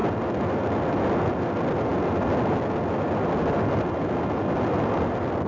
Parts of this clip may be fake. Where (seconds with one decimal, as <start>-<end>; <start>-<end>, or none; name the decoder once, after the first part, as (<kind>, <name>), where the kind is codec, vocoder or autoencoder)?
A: none